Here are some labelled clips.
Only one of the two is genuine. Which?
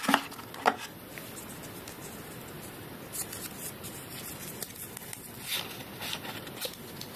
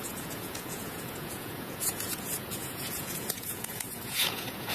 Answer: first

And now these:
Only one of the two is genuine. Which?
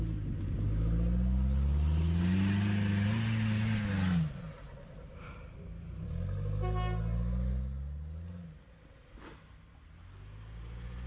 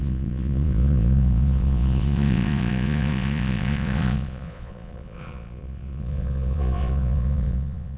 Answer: first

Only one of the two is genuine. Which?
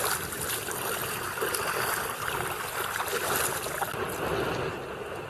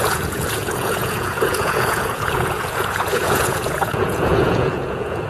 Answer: first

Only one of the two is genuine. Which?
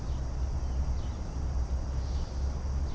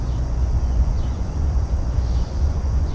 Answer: first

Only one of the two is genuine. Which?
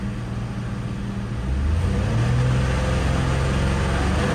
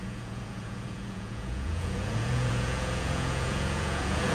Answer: first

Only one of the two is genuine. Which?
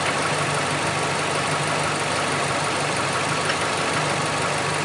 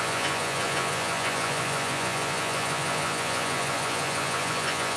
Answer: first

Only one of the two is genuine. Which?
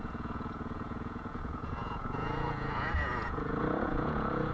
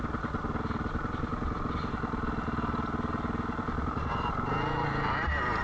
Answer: second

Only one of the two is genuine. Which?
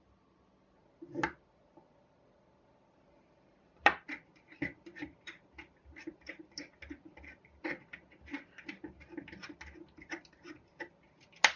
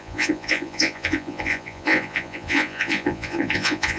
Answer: first